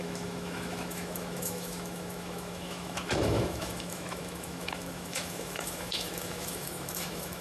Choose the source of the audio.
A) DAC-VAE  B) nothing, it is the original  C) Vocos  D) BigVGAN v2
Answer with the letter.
A